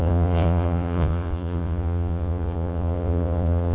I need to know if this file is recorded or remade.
remade